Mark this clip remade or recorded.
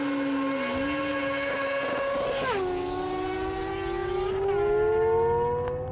recorded